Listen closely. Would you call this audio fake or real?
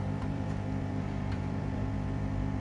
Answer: fake